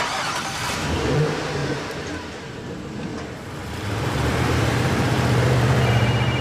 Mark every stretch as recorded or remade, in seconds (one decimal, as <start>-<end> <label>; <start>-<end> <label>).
0.0-1.6 remade; 1.6-2.4 recorded; 2.4-3.1 remade; 3.1-3.9 recorded; 3.9-6.4 remade

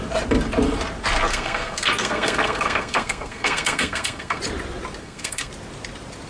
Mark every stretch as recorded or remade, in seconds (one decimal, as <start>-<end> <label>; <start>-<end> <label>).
0.0-1.3 recorded; 1.3-4.4 remade; 4.4-5.0 recorded; 5.0-5.5 remade; 5.5-6.3 recorded

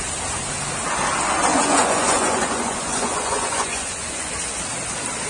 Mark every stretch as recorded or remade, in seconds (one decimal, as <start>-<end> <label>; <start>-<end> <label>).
0.0-1.5 recorded; 1.5-4.3 remade; 4.3-5.3 recorded

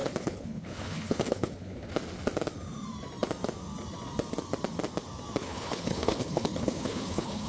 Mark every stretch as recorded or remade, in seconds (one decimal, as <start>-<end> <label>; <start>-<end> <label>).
0.0-1.9 remade; 1.9-5.4 recorded; 5.4-7.5 remade

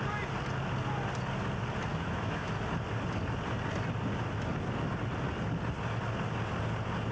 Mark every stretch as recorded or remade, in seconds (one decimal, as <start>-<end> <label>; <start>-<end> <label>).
0.0-1.9 recorded; 1.9-2.5 remade; 2.5-7.1 recorded

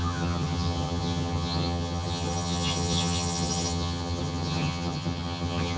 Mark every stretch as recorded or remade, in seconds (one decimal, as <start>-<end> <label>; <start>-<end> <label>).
0.0-5.8 remade

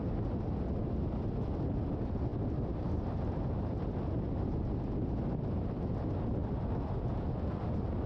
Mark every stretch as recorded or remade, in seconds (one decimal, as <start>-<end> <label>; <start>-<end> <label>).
0.0-8.1 recorded

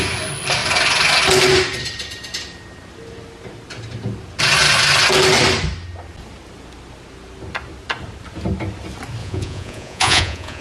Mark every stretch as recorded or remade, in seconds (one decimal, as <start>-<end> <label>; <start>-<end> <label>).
0.0-9.2 recorded; 9.2-10.6 remade